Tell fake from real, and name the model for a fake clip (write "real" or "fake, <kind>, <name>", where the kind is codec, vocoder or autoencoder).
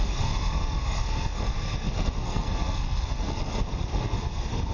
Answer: fake, codec, SNAC